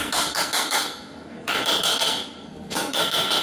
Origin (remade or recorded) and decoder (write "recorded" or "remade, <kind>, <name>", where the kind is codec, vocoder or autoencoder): remade, codec, SNAC